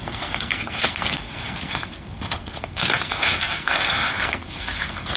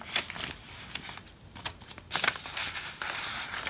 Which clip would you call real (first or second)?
second